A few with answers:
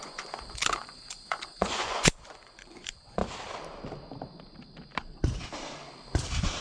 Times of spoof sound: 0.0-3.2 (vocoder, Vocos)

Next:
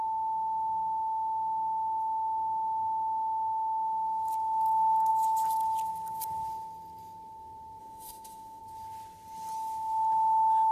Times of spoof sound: 7.8-8.6 (autoencoder, DAC-VAE)

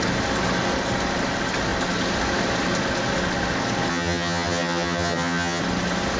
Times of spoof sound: 3.9-5.6 (vocoder, HiFi-GAN)

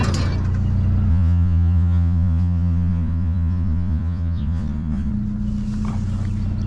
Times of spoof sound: 1.1-5.1 (vocoder, Vocos)

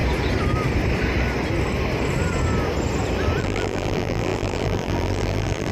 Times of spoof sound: 3.4-5.7 (vocoder, BigVGAN v2)